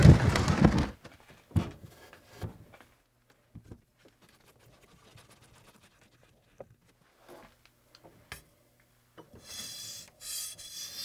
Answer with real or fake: real